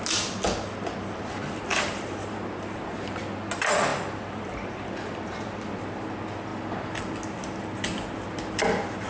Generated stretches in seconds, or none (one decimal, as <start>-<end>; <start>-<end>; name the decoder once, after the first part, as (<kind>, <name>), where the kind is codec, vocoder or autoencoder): 1.7-3.2 (vocoder, BigVGAN v2)